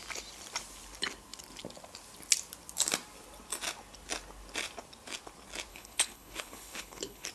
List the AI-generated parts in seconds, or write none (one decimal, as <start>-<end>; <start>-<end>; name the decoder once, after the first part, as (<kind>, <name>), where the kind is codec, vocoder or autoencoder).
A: 5.7-7.3 (codec, HILCodec)